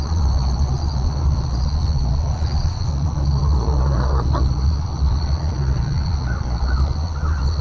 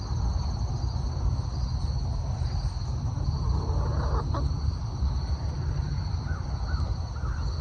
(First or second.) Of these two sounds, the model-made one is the first